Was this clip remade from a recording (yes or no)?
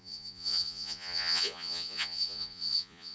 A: yes